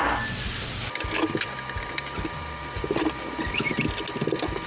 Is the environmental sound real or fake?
real